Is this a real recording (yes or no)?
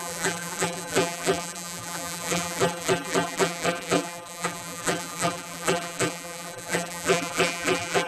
no